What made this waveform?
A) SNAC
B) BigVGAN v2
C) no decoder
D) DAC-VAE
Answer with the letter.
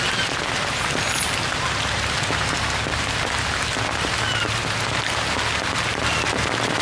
C